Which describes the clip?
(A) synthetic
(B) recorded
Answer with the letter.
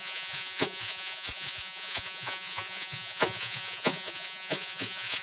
A